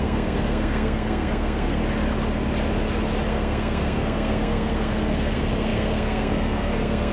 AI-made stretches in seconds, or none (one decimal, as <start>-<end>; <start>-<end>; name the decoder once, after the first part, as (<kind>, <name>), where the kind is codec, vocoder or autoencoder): 0.0-1.8 (codec, SNAC); 3.3-7.1